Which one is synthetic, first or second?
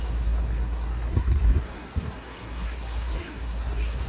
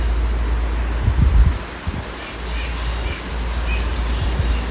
first